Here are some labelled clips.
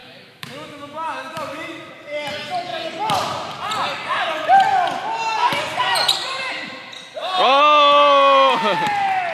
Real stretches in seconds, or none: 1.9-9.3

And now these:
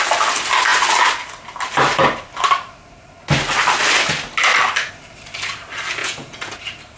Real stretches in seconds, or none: 0.0-6.0; 6.6-7.0

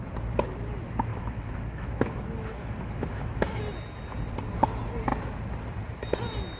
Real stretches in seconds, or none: 0.0-1.1; 3.6-6.6

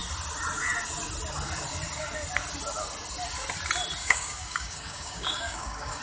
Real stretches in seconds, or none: 0.0-4.0

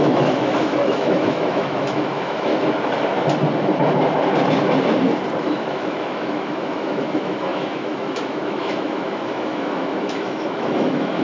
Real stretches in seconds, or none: 2.5-5.4

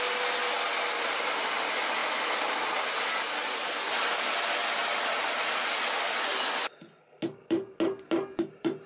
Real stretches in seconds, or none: 0.0-8.9

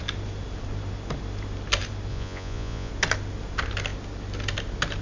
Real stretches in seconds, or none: 0.0-2.1; 2.9-5.0